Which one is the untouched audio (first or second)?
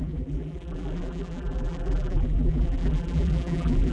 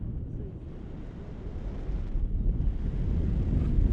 second